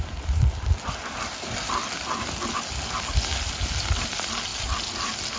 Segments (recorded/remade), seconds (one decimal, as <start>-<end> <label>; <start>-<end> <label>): 0.0-5.4 recorded

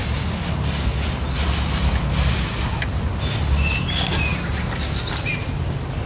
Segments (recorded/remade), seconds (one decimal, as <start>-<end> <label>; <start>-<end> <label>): 0.0-6.1 recorded